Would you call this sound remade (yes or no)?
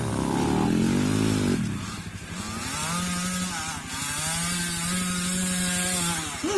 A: no